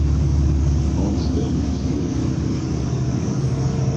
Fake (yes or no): yes